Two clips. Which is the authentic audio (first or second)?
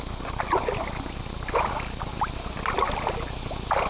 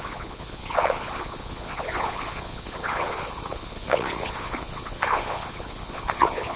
first